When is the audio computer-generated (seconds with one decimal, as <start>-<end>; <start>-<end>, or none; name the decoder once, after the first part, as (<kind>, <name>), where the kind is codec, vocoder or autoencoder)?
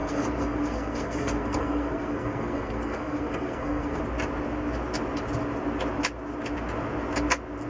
0.0-4.0 (codec, SNAC)